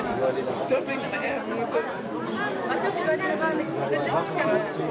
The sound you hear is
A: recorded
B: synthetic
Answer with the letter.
A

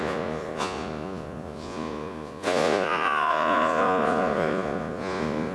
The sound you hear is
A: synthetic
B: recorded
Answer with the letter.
A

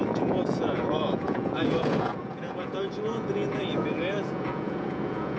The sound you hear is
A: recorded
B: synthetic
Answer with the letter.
B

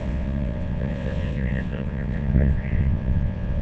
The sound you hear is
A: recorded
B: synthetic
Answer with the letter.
B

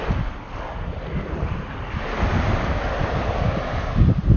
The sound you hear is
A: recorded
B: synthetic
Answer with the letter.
A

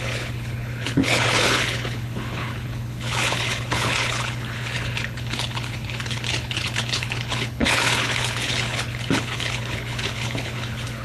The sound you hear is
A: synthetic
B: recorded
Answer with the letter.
A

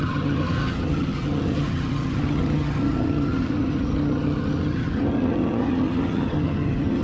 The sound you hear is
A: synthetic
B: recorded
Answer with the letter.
A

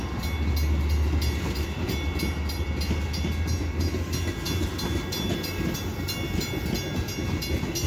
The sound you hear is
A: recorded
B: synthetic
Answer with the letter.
A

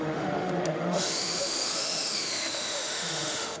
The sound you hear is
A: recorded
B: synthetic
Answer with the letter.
B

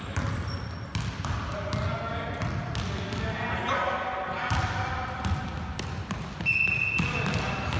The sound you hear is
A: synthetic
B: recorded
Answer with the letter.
B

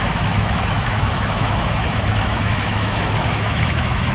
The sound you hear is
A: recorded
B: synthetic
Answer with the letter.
B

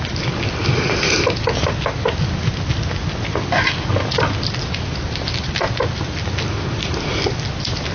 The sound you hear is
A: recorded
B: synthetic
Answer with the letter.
A